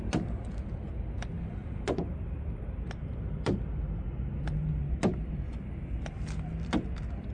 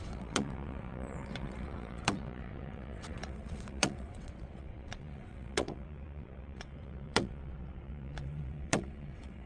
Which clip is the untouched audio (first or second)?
first